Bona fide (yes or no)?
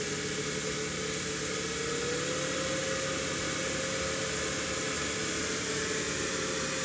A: yes